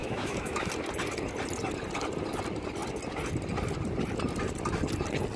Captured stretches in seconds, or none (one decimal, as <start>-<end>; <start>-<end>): 0.7-5.4